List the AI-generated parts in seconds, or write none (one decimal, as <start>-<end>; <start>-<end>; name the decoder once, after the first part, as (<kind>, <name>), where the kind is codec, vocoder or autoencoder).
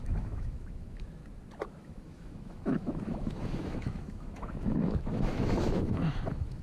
0.0-1.2 (autoencoder, DAC-VAE); 1.8-6.6